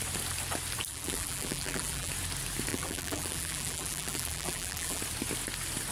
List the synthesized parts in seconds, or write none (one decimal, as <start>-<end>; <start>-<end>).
0.9-2.1; 2.7-5.0